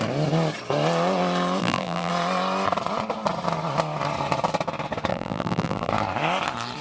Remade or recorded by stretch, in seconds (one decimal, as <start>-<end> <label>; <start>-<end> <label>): 0.0-1.6 recorded; 1.6-2.1 remade; 2.1-5.1 recorded; 5.1-5.9 remade; 5.9-6.8 recorded

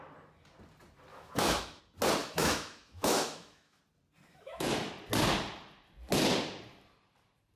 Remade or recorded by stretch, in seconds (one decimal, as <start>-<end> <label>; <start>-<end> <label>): 0.0-1.1 recorded; 1.1-1.8 remade; 1.8-2.2 recorded; 2.2-3.8 remade; 3.8-4.3 recorded; 4.3-4.9 remade; 4.9-7.6 recorded

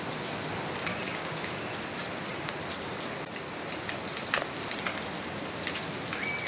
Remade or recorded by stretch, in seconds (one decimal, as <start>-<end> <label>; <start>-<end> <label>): 0.0-0.9 recorded; 0.9-1.5 remade; 1.5-6.5 recorded

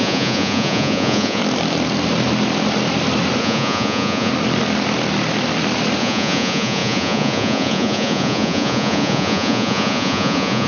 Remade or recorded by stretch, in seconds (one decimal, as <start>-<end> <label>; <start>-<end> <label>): 0.0-1.4 remade; 1.4-3.4 recorded; 3.4-4.3 remade; 4.3-6.0 recorded; 6.0-10.7 remade